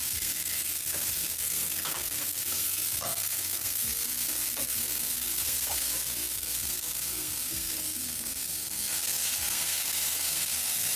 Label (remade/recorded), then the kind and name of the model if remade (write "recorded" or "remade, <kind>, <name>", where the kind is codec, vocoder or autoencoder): remade, codec, SNAC